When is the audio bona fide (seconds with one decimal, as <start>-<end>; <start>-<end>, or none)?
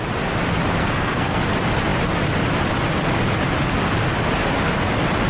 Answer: 0.0-0.8; 1.4-5.3